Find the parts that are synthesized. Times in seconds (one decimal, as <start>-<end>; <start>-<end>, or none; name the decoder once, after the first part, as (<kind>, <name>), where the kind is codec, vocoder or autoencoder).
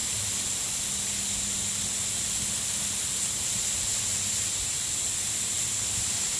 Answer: none